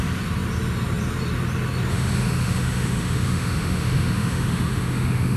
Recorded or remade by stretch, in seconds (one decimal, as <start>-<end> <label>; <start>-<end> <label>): 0.0-1.9 recorded; 1.9-5.4 remade